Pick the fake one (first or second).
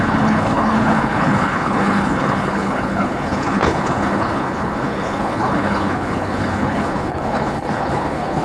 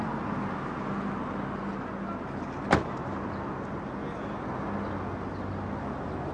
first